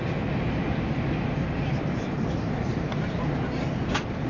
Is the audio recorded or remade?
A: recorded